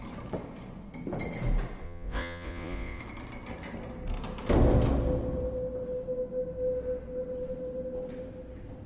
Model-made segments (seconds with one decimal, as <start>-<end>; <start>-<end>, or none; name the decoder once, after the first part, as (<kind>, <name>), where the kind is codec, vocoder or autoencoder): 1.8-3.0 (vocoder, Vocos)